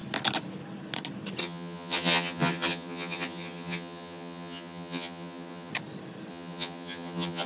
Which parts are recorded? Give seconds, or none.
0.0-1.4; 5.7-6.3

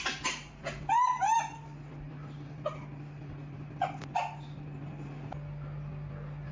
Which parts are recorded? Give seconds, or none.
0.0-6.5

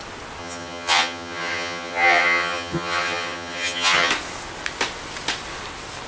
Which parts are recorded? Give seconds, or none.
0.0-0.4; 4.1-6.1

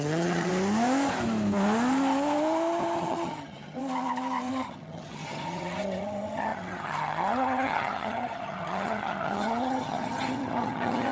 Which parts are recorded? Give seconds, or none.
0.5-3.0; 3.8-4.5

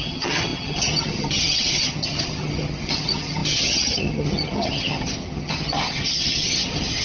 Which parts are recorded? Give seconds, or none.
none

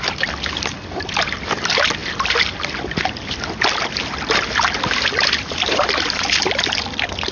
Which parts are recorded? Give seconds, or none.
0.0-7.3